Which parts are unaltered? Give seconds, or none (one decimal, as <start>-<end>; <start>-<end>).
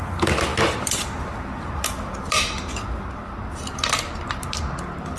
0.0-5.2